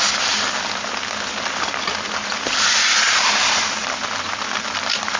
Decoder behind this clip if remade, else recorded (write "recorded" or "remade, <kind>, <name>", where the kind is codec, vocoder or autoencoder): recorded